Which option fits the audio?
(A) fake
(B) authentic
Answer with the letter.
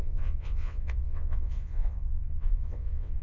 A